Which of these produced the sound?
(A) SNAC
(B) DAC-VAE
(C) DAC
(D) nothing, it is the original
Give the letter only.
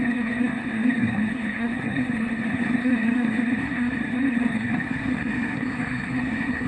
A